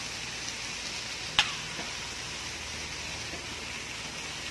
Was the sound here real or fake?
real